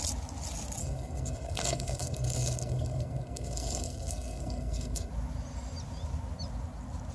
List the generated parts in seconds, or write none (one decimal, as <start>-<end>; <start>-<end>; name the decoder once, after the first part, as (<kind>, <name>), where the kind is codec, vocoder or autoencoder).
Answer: 0.8-5.1 (codec, SNAC)